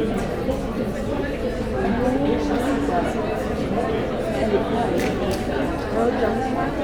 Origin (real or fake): real